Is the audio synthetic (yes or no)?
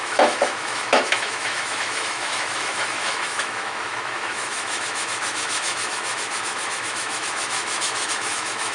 yes